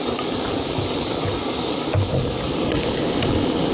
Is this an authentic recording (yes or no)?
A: yes